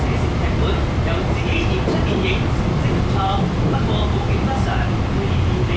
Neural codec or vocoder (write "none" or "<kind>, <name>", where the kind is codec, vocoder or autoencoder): none